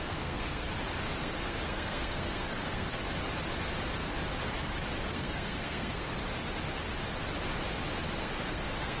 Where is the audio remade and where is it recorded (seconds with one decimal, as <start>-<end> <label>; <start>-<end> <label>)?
0.0-0.7 remade; 0.7-1.2 recorded; 1.2-3.0 remade; 3.0-5.1 recorded; 5.1-6.2 remade; 6.2-8.2 recorded; 8.2-9.0 remade